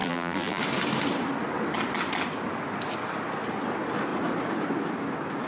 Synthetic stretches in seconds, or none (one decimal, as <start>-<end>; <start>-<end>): 0.0-0.6